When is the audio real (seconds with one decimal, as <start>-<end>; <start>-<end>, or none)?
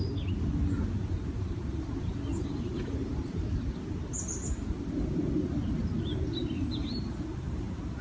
0.0-2.3; 3.4-6.8